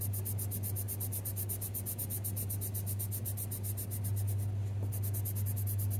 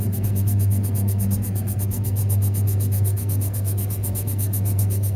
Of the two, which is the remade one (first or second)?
second